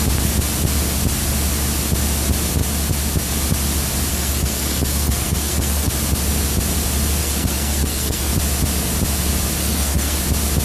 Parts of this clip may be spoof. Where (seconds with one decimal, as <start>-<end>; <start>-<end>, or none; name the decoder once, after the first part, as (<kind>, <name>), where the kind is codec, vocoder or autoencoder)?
4.1-5.9 (codec, SNAC); 7.2-8.3; 9.6-10.2